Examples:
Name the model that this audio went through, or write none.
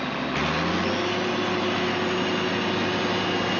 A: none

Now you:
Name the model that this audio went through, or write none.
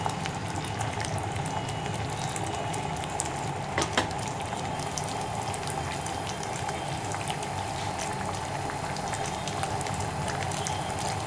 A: none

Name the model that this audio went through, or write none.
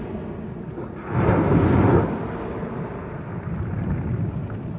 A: none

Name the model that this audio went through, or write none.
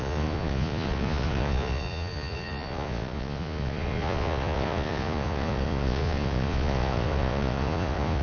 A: vocoder, Vocos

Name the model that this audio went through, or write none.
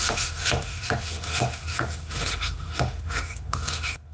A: autoencoder, DAC-VAE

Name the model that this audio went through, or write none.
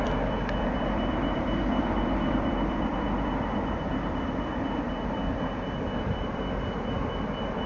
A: vocoder, BigVGAN v2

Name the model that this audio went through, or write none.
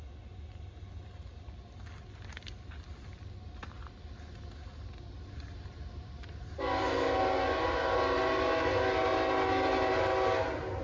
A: none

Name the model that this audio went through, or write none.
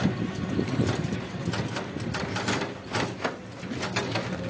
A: none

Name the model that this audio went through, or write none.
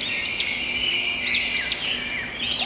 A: none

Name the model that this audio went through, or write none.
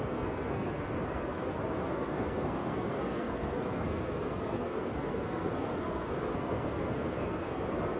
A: codec, SNAC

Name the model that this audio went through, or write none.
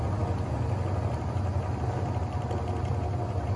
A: none